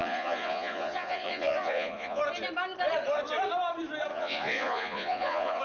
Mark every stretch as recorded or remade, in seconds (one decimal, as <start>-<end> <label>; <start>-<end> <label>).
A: 0.0-2.2 remade; 2.2-4.1 recorded; 4.1-5.6 remade